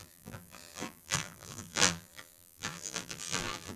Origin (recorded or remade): remade